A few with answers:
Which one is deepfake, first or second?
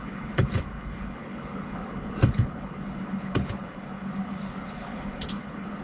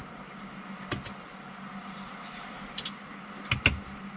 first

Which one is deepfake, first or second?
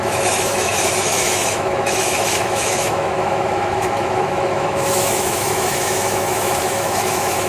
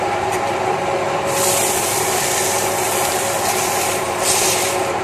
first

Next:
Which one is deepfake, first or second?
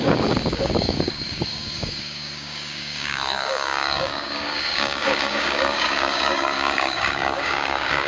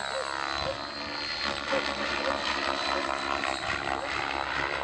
first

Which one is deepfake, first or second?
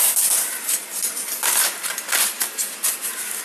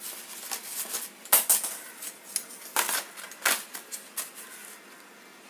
first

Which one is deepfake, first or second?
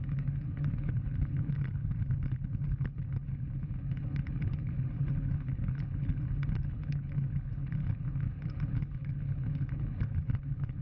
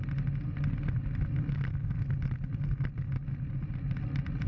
first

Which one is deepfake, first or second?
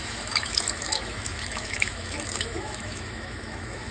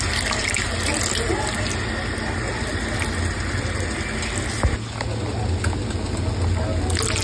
first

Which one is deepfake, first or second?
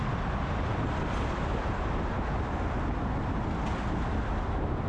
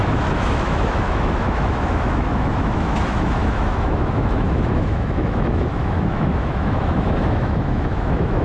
second